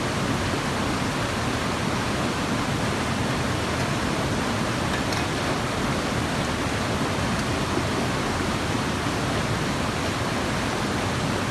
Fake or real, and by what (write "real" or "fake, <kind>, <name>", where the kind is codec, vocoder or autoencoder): real